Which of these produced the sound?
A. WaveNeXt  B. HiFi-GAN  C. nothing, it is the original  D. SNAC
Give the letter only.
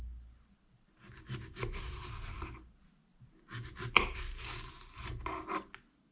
C